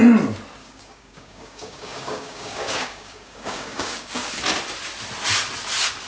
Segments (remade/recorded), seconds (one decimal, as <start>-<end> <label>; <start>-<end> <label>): 0.0-0.6 recorded; 0.6-4.3 remade; 4.3-6.1 recorded

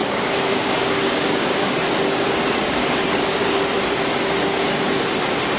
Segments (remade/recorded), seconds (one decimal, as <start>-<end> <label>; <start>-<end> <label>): 0.0-3.4 remade; 3.4-4.1 recorded; 4.1-5.0 remade; 5.0-5.6 recorded